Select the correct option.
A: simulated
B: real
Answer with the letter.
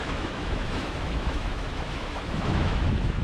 A